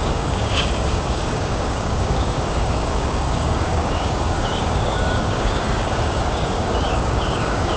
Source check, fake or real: fake